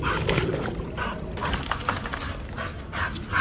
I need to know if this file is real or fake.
real